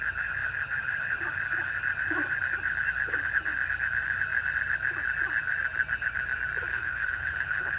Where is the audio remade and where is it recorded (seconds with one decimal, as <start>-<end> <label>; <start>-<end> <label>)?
0.0-6.7 recorded; 6.7-7.8 remade